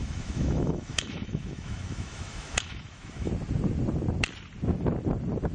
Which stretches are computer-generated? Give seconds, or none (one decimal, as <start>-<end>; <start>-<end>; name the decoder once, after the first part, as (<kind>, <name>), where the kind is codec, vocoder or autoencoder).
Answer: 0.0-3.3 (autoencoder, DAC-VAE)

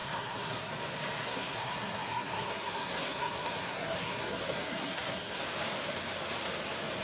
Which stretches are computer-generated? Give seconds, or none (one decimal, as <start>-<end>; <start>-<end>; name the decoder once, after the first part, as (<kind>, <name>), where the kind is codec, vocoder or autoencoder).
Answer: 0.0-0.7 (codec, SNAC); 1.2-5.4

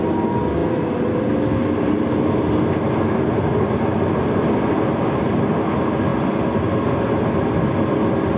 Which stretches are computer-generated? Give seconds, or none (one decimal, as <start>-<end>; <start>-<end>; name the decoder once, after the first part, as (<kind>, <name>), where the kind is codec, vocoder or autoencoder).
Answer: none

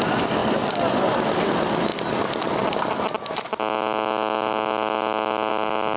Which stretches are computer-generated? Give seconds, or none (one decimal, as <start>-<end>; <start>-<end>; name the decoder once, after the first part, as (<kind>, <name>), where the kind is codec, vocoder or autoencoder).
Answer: 0.4-1.0 (vocoder, BigVGAN v2)

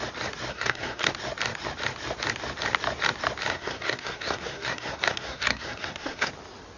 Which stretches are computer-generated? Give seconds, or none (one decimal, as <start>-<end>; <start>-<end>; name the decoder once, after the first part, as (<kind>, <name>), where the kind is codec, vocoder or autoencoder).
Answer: 0.5-1.1 (codec, SNAC); 3.5-6.3

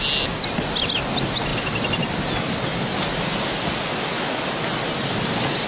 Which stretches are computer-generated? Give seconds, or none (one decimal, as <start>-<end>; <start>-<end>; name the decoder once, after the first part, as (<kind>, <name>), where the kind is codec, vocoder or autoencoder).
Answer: none